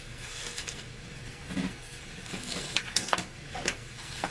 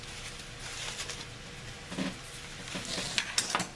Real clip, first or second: second